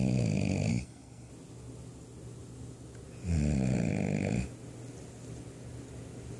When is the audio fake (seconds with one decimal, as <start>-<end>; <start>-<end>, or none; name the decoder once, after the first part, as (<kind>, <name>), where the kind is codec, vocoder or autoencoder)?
0.7-1.3 (codec, SNAC)